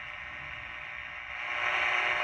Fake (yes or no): no